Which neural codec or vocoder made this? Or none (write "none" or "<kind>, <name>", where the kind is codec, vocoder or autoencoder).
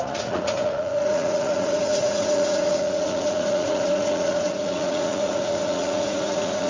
vocoder, Vocos